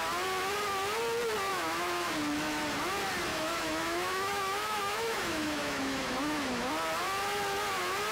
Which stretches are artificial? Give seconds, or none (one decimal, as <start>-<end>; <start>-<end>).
1.5-2.1; 3.3-6.7